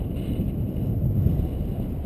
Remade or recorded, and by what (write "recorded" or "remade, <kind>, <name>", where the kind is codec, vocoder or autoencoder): recorded